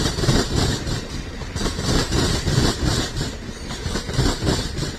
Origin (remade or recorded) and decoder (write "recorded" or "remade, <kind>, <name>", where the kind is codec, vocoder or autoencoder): remade, vocoder, BigVGAN v2